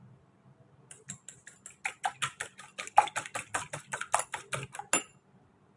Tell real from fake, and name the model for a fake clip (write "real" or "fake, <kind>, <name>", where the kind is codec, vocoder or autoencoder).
real